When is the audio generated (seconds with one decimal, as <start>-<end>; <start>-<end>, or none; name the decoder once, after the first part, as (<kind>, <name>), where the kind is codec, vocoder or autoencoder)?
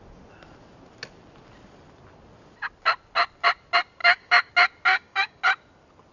4.0-4.5 (codec, DAC); 4.9-5.4